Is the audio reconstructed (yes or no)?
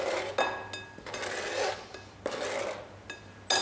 no